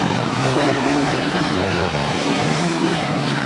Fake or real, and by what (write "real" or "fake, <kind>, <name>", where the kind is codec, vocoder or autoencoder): fake, codec, SNAC